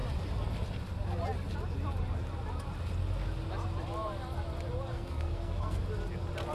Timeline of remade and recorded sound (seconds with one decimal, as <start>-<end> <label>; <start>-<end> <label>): 0.0-4.9 recorded; 4.9-5.8 remade; 5.8-6.5 recorded